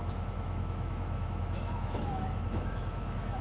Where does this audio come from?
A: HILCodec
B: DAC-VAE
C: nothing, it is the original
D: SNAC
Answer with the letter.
B